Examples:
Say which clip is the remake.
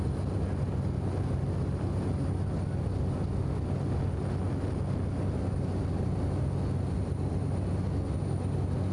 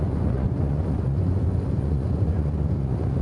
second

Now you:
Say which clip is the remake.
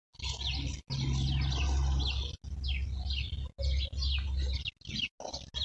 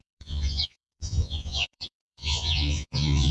second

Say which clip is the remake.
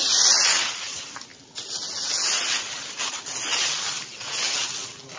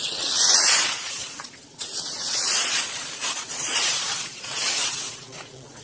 second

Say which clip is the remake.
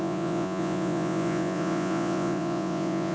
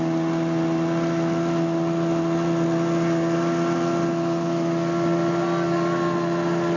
first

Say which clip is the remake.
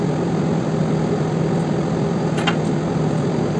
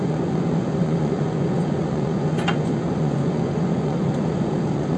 second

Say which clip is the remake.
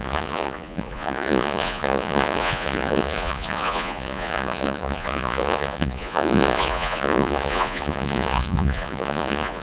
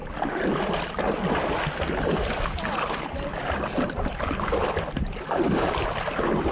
first